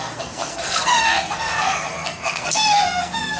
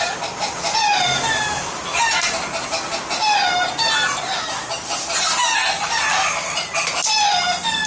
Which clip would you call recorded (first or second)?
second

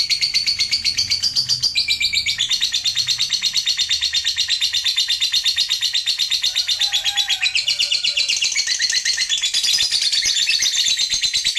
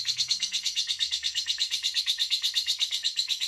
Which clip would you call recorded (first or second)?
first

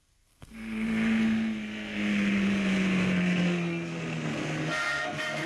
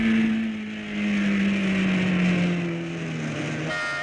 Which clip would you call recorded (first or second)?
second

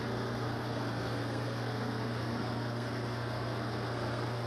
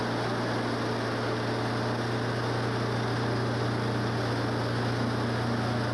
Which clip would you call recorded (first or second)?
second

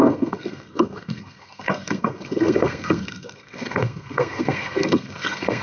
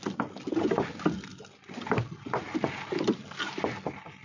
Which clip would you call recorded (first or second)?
second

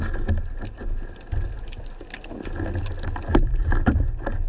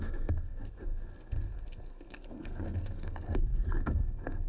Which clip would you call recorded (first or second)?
first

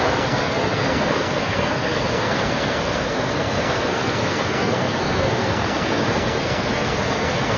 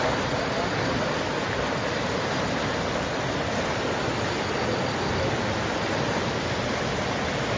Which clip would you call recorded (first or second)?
second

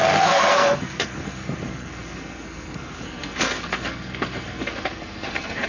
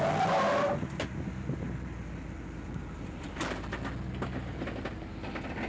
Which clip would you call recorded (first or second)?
second